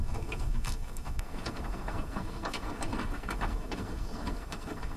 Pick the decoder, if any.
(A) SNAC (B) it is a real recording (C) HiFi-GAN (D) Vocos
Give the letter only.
A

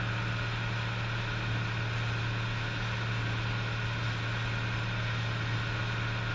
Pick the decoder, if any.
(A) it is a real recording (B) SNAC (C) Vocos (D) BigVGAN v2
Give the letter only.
A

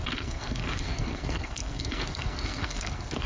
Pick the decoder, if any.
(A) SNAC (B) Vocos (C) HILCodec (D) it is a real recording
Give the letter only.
A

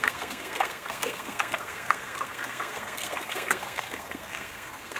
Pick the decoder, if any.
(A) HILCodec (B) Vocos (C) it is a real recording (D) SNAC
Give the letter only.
D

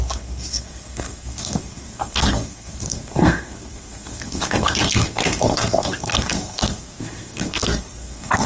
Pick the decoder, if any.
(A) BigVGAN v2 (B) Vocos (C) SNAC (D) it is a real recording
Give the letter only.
C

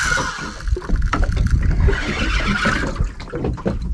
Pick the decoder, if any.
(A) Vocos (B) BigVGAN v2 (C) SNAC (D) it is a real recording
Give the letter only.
D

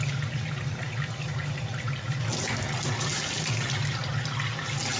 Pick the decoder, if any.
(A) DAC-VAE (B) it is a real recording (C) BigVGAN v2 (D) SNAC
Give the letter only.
B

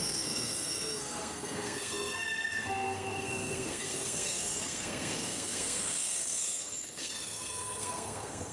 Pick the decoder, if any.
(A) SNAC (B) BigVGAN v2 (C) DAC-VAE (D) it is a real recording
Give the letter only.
A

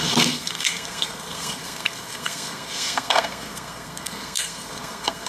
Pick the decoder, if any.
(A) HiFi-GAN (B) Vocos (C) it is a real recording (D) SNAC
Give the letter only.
D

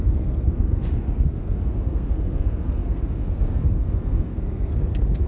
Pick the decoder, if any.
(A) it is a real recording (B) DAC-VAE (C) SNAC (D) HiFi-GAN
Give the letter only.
C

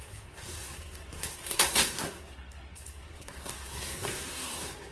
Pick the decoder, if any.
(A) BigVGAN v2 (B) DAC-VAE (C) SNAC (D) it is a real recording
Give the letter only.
C